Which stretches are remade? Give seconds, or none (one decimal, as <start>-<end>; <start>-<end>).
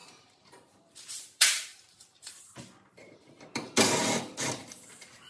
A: 0.0-3.2